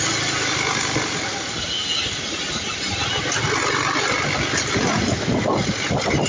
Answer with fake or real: real